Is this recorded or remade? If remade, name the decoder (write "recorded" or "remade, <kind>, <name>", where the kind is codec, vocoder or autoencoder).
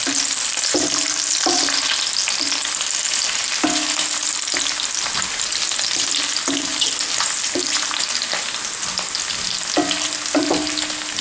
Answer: recorded